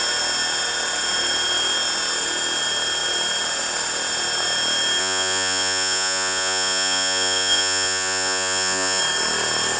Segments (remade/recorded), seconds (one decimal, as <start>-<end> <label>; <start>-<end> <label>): 0.0-5.0 recorded; 5.0-9.0 remade; 9.0-9.8 recorded

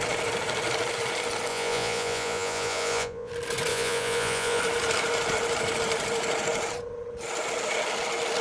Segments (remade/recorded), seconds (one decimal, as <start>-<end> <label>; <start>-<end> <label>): 0.0-1.5 recorded; 1.5-3.3 remade; 3.3-3.7 recorded; 3.7-4.6 remade; 4.6-8.4 recorded

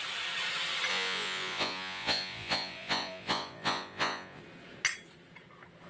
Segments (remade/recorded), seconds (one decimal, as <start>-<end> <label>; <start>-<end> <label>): 0.0-0.9 recorded; 0.9-4.4 remade; 4.4-5.9 recorded